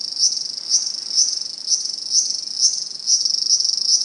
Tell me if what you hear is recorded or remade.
recorded